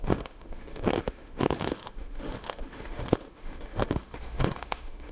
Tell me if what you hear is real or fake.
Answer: fake